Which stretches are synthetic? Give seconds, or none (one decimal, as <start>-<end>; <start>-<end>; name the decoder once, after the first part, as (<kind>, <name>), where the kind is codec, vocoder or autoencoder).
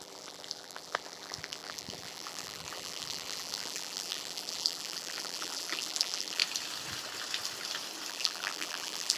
0.0-6.4 (vocoder, BigVGAN v2); 8.1-9.2